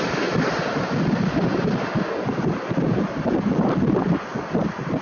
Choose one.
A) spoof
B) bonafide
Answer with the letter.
B